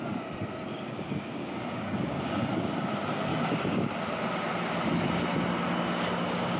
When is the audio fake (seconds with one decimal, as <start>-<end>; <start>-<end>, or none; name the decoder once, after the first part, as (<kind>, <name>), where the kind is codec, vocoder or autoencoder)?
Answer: 0.7-2.9 (codec, DAC); 3.3-3.8